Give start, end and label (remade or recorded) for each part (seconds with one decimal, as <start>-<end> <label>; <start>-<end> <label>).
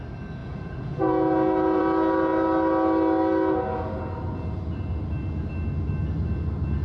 0.0-0.4 recorded; 0.4-1.8 remade; 1.8-6.8 recorded